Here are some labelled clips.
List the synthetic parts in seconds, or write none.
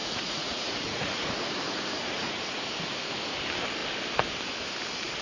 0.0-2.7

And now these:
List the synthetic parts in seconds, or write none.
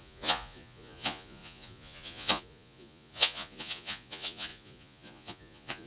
0.0-5.9